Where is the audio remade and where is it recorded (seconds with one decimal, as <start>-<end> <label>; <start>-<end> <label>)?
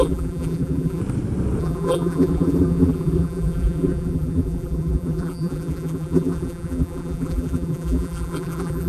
0.0-1.0 remade; 1.0-1.6 recorded; 1.6-8.9 remade